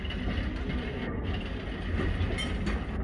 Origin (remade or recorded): recorded